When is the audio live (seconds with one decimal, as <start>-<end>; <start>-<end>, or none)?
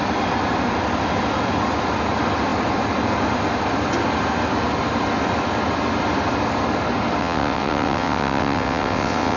0.0-7.2